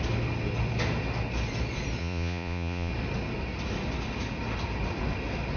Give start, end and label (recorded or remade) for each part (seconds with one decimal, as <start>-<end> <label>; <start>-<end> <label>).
0.0-2.0 recorded; 2.0-2.9 remade; 2.9-5.6 recorded